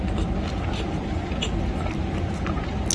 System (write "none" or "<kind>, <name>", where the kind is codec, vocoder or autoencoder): none